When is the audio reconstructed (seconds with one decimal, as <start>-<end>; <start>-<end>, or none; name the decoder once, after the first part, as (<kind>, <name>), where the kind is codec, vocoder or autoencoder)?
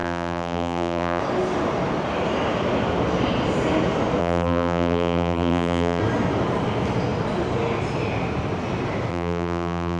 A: 0.0-1.2 (vocoder, BigVGAN v2); 4.2-6.0; 9.1-10.0